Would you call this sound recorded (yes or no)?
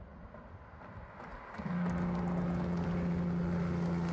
yes